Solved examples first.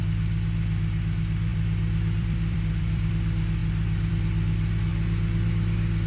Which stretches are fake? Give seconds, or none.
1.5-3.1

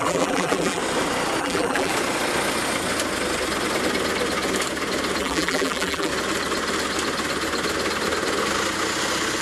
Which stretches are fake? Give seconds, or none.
0.0-0.8; 1.4-1.9; 5.2-6.1

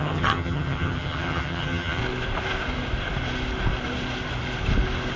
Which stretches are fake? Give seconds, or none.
0.0-2.0

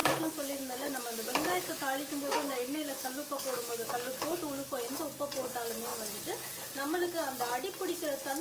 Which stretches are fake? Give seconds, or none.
0.0-4.7

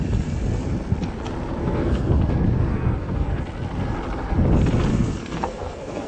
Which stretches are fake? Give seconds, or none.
1.6-2.1; 2.7-3.4; 4.9-6.1

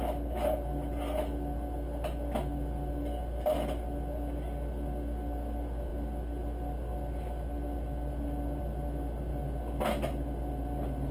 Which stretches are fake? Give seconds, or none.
none

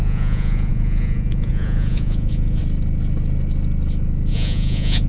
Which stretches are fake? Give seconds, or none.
0.0-2.6; 4.3-5.1

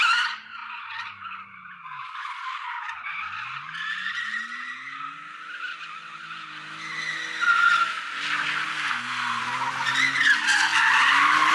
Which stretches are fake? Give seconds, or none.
8.7-9.4